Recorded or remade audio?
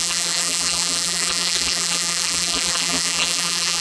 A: remade